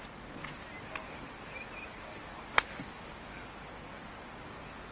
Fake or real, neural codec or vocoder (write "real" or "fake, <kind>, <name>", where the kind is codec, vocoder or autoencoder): real